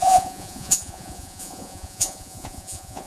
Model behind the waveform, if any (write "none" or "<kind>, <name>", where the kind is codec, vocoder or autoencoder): vocoder, Vocos